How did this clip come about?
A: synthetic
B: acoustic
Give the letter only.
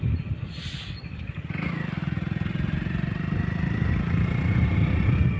B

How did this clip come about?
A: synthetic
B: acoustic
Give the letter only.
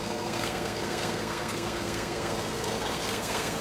A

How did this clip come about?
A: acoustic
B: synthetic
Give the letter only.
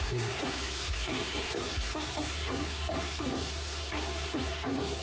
B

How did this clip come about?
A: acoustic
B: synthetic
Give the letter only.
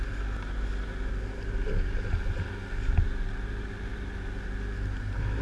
A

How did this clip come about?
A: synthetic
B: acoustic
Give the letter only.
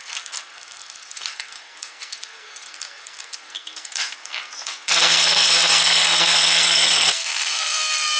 A